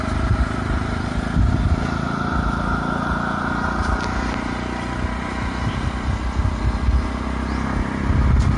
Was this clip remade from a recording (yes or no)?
no